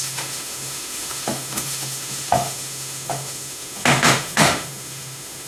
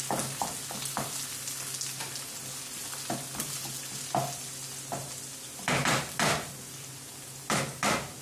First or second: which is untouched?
second